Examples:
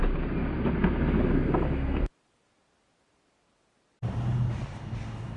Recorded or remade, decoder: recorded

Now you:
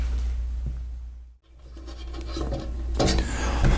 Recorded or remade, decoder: recorded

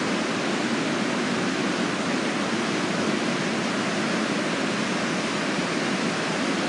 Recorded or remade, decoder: recorded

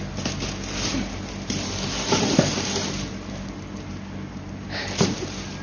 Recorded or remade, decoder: recorded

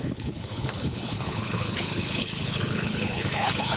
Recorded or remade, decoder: remade, codec, HILCodec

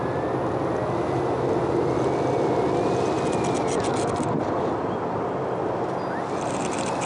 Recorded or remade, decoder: recorded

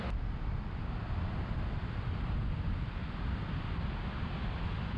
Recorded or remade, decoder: recorded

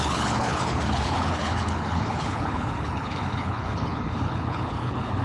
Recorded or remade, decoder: remade, codec, HILCodec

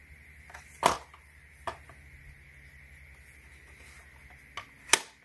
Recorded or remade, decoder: recorded